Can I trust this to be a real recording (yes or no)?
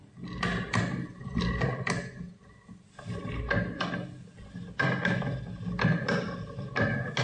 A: yes